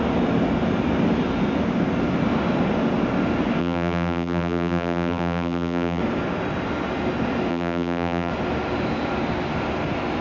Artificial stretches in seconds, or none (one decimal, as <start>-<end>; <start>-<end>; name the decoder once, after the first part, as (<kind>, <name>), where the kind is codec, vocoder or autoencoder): 3.6-6.0 (vocoder, BigVGAN v2); 7.5-8.3